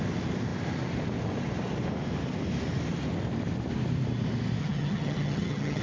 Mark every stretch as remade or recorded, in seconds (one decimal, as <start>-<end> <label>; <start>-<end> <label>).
0.0-4.6 recorded; 4.6-5.8 remade